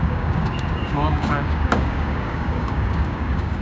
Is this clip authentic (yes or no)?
no